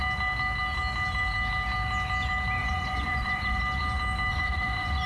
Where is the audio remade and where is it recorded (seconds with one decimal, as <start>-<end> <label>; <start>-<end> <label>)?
0.0-2.6 recorded; 2.6-3.6 remade; 3.6-4.3 recorded; 4.3-5.1 remade

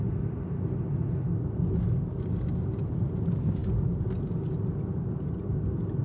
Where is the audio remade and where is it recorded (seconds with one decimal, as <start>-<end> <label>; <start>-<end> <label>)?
0.0-6.0 recorded